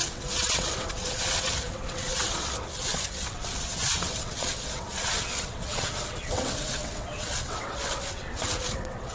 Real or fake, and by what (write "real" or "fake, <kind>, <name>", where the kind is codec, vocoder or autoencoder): fake, vocoder, WaveNeXt